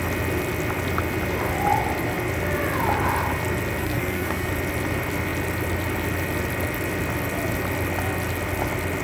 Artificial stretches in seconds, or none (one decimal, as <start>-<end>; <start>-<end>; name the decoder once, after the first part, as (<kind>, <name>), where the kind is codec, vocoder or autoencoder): 3.8-4.5 (codec, SNAC)